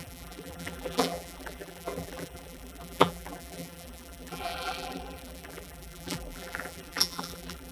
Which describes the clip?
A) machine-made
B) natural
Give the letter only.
A